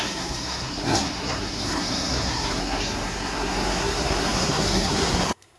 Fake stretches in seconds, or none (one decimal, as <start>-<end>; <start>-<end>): 0.0-5.6